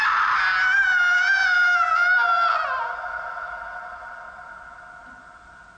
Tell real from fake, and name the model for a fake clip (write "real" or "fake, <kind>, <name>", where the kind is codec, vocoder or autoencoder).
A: real